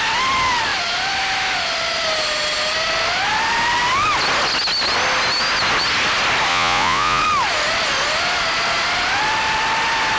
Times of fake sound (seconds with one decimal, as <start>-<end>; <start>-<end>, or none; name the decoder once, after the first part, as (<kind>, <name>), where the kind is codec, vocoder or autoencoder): 6.5-7.2 (vocoder, Vocos)